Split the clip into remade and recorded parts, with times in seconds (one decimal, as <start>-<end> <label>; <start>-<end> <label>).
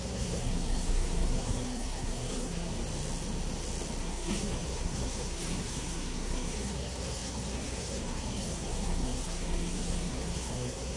0.0-2.7 remade; 2.7-4.0 recorded; 4.0-11.0 remade